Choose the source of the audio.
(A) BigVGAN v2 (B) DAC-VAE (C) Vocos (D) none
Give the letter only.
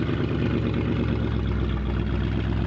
D